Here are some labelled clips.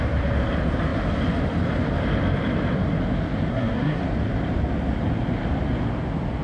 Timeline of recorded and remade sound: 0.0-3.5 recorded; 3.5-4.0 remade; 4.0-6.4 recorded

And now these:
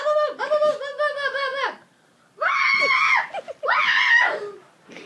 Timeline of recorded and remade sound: 0.0-5.1 recorded

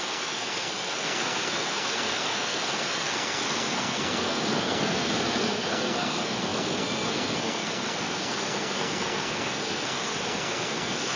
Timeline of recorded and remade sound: 0.0-11.2 remade

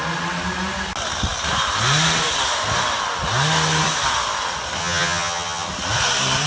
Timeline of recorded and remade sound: 0.0-4.8 recorded; 4.8-5.7 remade; 5.7-6.5 recorded

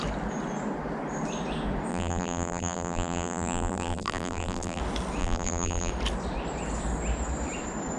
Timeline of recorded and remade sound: 0.0-1.9 recorded; 1.9-4.8 remade; 4.8-5.2 recorded; 5.2-5.9 remade; 5.9-8.0 recorded

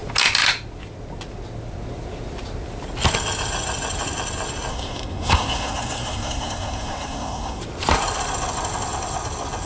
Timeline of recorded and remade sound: 0.0-4.7 recorded; 4.7-7.6 remade; 7.6-9.7 recorded